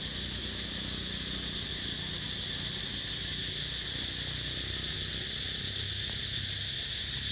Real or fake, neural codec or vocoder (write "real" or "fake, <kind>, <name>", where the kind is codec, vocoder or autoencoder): real